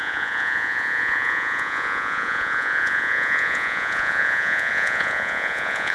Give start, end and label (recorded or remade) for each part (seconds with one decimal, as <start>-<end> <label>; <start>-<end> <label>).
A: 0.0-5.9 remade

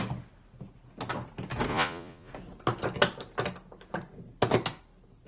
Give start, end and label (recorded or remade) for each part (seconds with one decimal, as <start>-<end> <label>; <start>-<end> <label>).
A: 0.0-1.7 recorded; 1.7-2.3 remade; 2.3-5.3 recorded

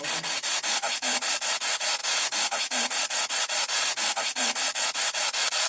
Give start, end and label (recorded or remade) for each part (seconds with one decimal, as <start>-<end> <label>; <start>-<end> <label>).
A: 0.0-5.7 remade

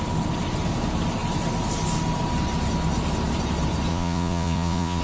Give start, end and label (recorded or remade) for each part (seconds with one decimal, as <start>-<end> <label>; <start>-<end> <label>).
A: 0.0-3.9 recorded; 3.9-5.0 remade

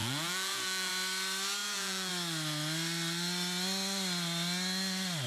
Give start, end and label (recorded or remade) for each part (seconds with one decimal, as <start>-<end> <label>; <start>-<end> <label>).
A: 0.0-0.9 remade; 0.9-1.6 recorded; 1.6-2.1 remade; 2.1-5.3 recorded